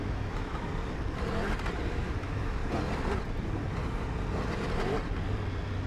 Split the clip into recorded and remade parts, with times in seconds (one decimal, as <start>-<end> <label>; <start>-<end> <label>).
0.0-0.7 remade; 0.7-1.9 recorded; 1.9-2.6 remade; 2.6-5.9 recorded